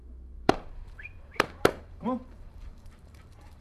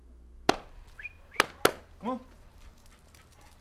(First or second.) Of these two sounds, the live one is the second